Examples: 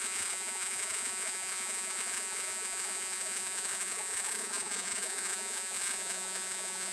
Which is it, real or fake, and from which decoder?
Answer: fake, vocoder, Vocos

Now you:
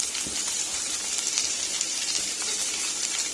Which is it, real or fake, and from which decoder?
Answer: fake, vocoder, BigVGAN v2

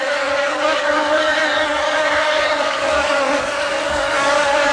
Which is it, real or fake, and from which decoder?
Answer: fake, codec, DAC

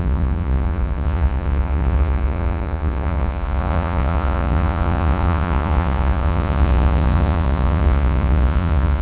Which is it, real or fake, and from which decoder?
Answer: fake, vocoder, Vocos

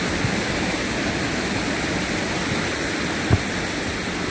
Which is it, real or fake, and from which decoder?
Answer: real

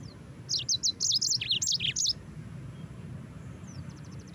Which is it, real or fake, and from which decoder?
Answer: real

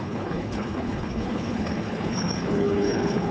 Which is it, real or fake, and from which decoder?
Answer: fake, codec, HILCodec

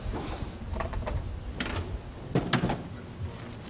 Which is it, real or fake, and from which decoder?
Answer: real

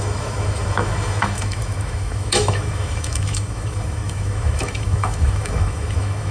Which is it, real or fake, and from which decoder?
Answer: fake, autoencoder, DAC-VAE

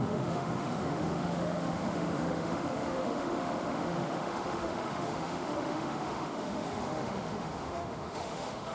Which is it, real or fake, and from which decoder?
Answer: fake, autoencoder, DAC-VAE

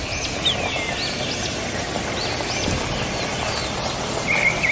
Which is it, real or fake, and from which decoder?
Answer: real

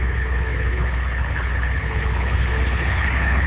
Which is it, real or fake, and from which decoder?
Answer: fake, codec, HILCodec